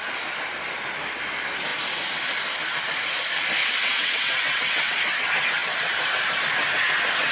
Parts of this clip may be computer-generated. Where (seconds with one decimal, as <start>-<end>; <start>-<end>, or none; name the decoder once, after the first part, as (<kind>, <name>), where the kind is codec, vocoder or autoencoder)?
3.6-5.0 (vocoder, WaveNeXt)

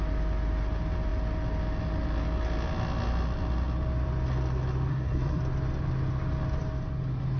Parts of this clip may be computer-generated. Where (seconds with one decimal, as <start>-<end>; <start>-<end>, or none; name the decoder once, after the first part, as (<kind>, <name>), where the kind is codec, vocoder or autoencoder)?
4.9-5.4 (codec, SNAC)

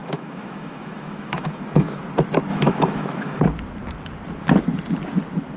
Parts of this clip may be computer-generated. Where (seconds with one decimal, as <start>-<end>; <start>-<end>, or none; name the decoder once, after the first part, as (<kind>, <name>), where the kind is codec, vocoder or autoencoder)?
0.0-2.0 (autoencoder, DAC-VAE); 2.5-3.4

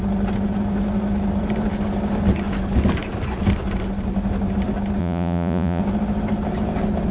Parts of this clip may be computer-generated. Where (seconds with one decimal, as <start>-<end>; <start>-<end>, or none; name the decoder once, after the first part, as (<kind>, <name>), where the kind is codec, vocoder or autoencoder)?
5.0-5.8 (vocoder, Vocos)

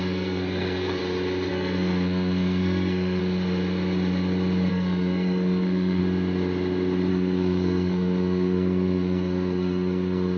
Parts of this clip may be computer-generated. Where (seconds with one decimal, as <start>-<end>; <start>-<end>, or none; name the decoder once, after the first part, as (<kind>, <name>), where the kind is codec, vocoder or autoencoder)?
0.0-1.0 (codec, SNAC); 1.5-3.2; 4.7-6.0; 7.1-10.4